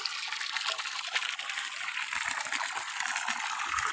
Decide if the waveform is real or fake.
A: real